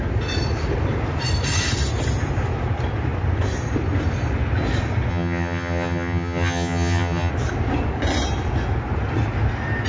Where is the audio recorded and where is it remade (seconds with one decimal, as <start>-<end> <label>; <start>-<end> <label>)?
0.0-5.1 recorded; 5.1-7.3 remade; 7.3-9.9 recorded